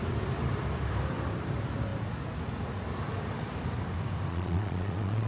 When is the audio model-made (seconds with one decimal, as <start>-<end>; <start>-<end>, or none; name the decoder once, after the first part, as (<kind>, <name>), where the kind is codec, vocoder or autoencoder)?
4.3-5.3 (vocoder, Vocos)